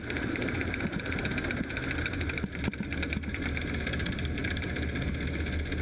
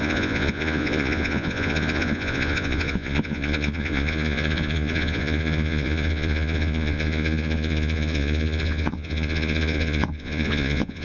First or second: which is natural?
first